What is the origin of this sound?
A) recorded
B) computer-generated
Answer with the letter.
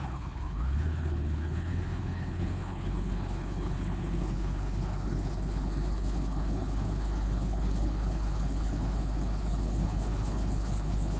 B